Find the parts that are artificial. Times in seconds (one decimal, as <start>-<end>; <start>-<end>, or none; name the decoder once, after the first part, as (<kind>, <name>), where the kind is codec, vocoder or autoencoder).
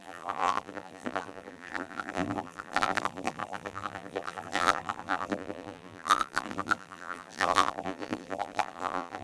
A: 0.0-9.2 (vocoder, BigVGAN v2)